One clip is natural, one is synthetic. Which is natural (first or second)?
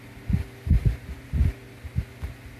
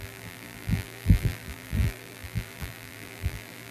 first